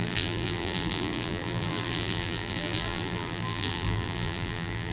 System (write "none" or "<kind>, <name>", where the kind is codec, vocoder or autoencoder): vocoder, BigVGAN v2